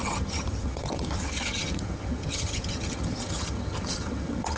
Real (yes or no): no